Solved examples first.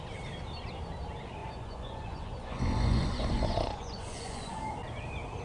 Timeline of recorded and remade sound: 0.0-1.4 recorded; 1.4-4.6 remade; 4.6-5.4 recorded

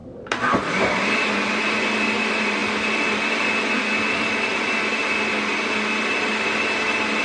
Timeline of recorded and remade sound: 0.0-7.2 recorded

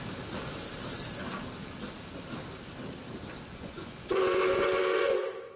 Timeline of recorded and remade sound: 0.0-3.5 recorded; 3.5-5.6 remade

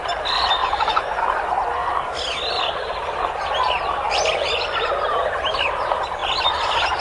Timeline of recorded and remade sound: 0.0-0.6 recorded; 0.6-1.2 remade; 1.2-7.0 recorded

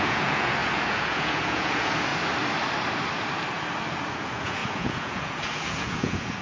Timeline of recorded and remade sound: 0.0-2.1 remade; 2.1-4.1 recorded; 4.1-6.4 remade

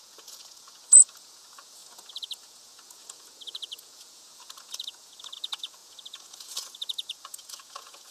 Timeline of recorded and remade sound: 0.0-8.1 remade